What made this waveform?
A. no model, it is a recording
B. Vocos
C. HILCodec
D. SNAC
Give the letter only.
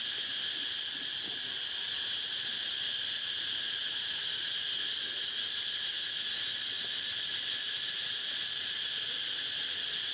A